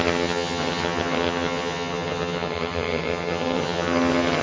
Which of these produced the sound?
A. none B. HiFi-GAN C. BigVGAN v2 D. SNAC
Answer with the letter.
B